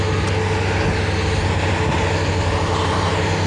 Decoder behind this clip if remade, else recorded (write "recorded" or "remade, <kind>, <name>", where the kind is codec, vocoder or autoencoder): recorded